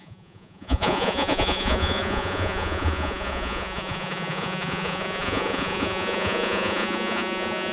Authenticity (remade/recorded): remade